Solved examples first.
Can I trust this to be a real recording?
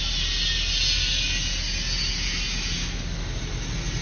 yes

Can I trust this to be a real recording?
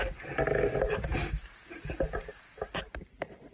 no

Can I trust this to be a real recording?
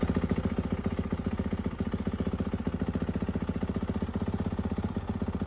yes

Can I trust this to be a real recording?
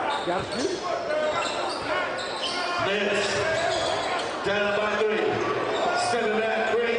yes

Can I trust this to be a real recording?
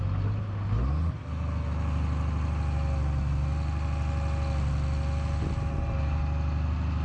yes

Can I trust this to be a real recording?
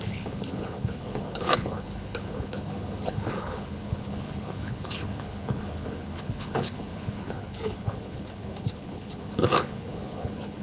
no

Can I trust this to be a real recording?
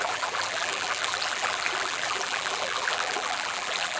no